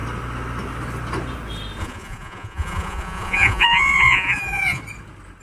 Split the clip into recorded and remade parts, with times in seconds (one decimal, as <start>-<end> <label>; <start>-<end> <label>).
0.0-1.8 recorded; 1.8-4.8 remade; 4.8-5.4 recorded